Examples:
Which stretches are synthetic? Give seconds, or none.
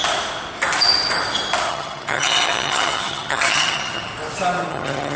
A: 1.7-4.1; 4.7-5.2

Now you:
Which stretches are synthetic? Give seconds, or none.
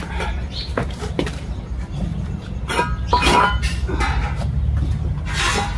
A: none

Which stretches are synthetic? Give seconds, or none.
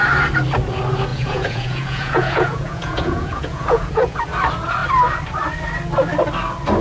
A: 1.1-4.2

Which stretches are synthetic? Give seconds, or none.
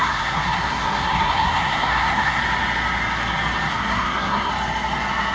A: 0.0-2.4; 3.7-4.5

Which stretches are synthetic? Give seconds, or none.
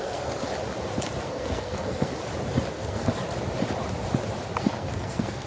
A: 0.0-0.5; 1.2-2.1; 2.7-3.1; 4.6-5.5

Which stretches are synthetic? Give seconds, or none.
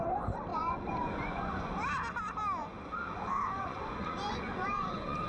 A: 0.5-1.7; 2.6-5.3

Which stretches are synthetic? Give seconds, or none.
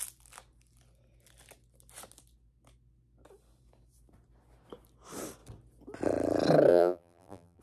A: 6.7-7.6